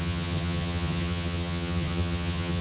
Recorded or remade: remade